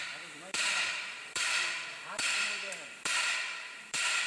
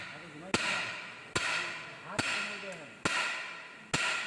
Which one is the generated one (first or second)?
first